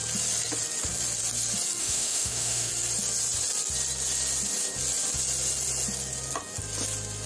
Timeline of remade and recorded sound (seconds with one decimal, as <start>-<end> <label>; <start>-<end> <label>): 0.0-1.8 recorded; 1.8-2.7 remade; 2.7-7.3 recorded